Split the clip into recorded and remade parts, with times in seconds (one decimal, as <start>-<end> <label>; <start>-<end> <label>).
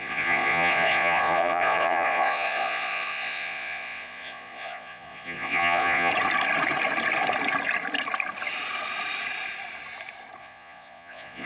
0.0-6.1 remade; 6.1-10.4 recorded; 10.4-11.5 remade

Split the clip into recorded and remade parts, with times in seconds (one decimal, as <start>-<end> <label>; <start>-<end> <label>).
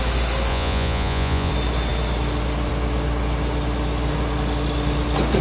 0.0-0.5 recorded; 0.5-1.5 remade; 1.5-5.4 recorded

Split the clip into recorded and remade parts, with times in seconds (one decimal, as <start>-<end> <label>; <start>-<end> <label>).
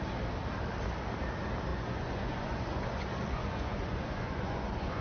0.0-1.7 recorded; 1.7-5.0 remade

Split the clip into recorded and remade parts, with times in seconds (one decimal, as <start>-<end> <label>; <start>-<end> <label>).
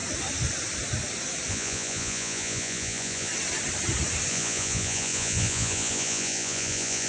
0.0-1.5 recorded; 1.5-3.3 remade; 3.3-4.3 recorded; 4.3-7.1 remade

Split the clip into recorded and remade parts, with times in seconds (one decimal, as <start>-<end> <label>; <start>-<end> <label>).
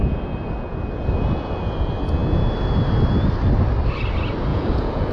0.0-4.5 recorded; 4.5-5.1 remade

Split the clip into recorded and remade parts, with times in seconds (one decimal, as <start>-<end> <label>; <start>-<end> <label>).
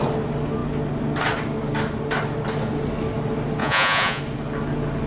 0.0-3.6 recorded; 3.6-4.2 remade; 4.2-5.1 recorded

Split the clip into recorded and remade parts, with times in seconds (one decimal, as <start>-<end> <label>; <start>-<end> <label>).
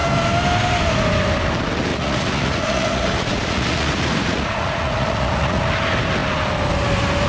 0.0-1.9 recorded; 1.9-5.6 remade; 5.6-7.3 recorded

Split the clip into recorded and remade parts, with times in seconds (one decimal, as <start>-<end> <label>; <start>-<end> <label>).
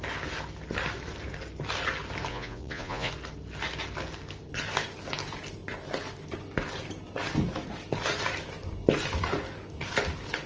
0.0-2.3 recorded; 2.3-3.1 remade; 3.1-10.5 recorded